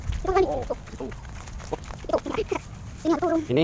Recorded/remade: recorded